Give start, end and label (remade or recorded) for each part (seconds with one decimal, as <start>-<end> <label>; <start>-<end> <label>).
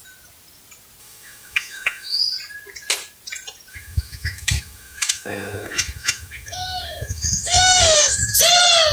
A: 0.0-1.0 recorded; 1.0-2.2 remade; 2.2-3.7 recorded; 3.7-8.4 remade; 8.4-8.9 recorded